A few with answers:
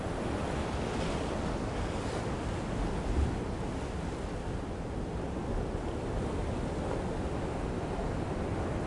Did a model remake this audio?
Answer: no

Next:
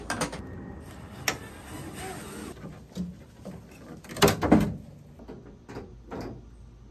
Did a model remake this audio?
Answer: no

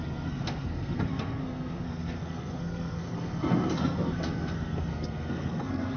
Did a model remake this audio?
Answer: yes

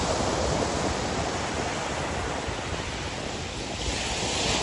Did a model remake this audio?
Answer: no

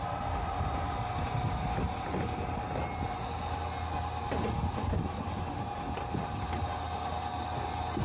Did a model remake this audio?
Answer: no